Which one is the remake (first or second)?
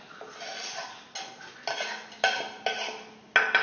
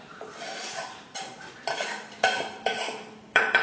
second